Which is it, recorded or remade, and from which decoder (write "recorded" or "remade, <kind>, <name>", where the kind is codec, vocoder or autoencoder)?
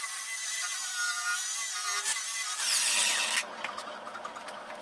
recorded